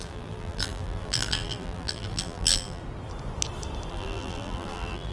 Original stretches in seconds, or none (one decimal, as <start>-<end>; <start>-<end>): 2.8-3.9